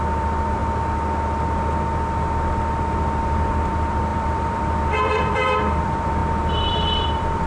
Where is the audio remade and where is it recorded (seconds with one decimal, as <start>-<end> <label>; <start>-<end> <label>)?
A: 0.0-0.6 remade; 0.6-3.2 recorded; 3.2-6.2 remade; 6.2-6.7 recorded; 6.7-7.5 remade